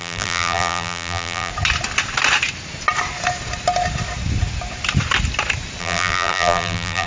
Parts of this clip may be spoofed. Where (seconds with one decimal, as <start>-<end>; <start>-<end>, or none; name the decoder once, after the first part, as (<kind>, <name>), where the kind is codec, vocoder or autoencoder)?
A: 0.0-1.5 (vocoder, BigVGAN v2); 5.8-7.1